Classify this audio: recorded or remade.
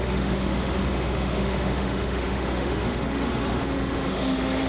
remade